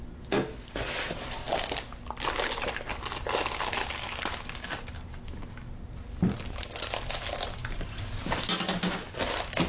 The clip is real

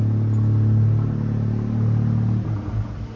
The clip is real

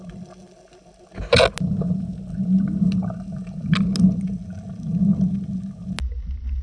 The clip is real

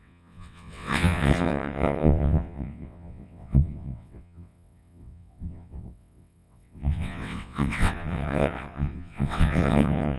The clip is fake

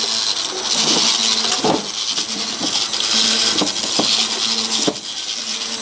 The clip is real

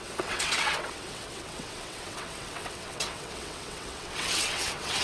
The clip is fake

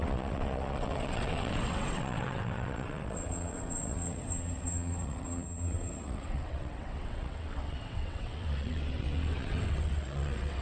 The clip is fake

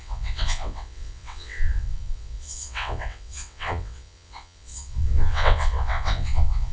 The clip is fake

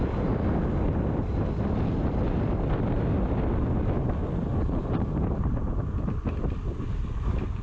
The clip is real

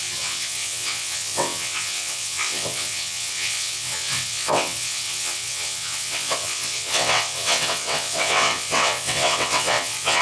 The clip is fake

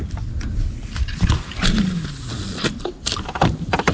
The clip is real